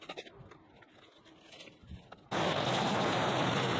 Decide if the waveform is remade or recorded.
recorded